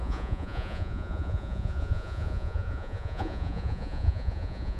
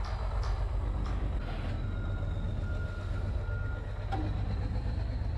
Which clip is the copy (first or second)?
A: first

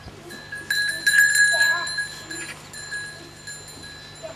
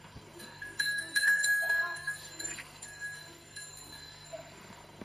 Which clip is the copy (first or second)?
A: second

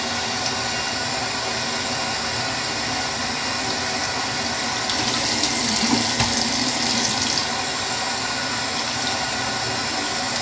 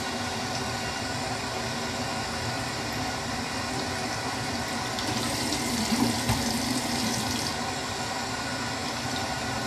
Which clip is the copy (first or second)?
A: second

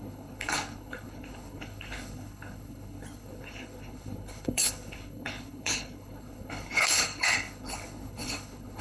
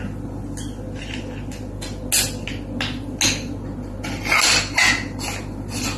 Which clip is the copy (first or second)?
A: first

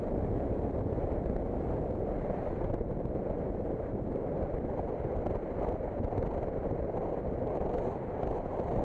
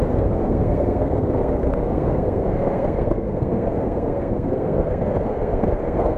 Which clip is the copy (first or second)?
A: second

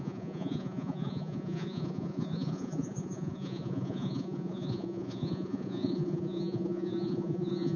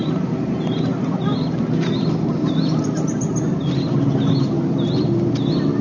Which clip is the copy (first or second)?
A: first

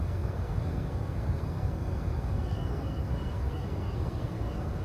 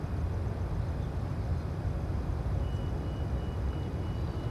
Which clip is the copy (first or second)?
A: first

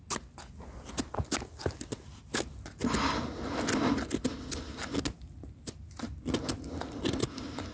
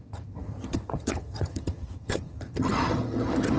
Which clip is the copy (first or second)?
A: second